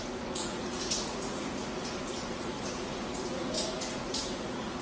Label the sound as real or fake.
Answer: fake